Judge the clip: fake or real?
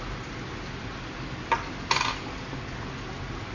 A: real